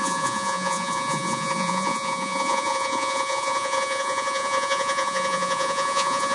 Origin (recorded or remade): remade